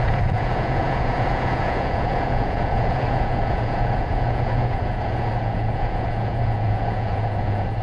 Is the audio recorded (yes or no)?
no